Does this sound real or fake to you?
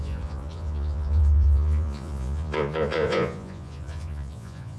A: fake